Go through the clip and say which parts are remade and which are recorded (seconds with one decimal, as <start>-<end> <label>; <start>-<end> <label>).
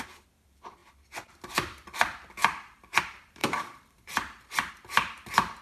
0.0-5.6 remade